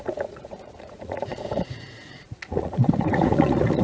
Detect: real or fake fake